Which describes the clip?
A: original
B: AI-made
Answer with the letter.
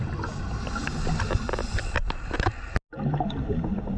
A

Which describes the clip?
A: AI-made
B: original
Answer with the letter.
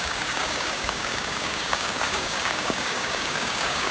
A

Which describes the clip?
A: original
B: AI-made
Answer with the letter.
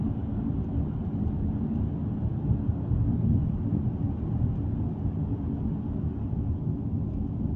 A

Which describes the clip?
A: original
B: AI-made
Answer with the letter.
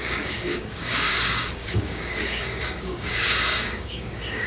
B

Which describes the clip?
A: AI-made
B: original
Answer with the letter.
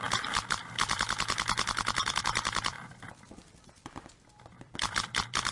A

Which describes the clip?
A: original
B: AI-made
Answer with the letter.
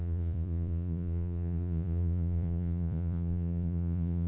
B